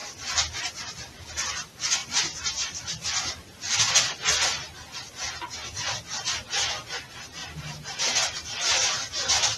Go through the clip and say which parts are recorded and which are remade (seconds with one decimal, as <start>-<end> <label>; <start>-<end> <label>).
0.0-2.0 recorded; 2.0-4.1 remade; 4.1-7.4 recorded; 7.4-9.1 remade; 9.1-9.6 recorded